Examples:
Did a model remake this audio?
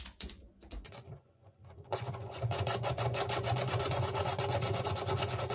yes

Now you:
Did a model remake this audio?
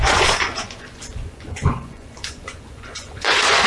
yes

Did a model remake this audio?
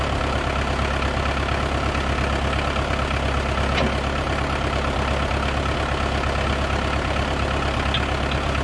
no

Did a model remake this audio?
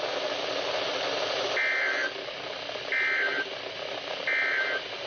no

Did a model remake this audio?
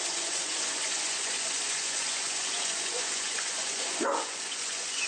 yes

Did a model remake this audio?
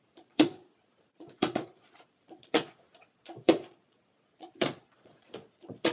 yes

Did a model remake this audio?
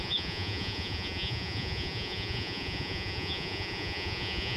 yes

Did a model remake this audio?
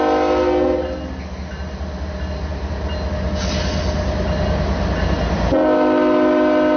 no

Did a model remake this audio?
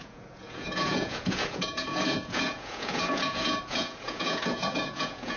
yes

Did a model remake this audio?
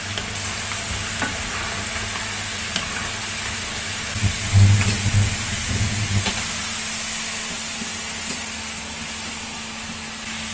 no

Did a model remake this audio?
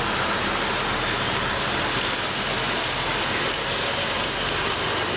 no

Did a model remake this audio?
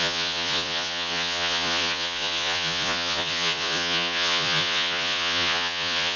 yes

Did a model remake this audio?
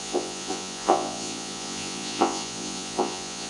yes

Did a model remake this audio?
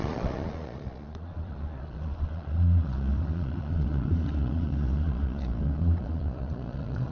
yes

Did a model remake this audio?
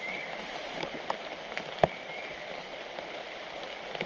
no